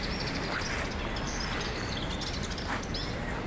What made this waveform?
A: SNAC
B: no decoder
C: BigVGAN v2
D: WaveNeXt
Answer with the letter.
B